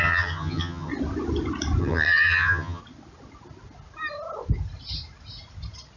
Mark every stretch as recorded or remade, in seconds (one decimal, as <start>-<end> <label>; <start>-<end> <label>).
0.0-0.9 remade; 0.9-1.8 recorded; 1.8-2.8 remade; 2.8-6.0 recorded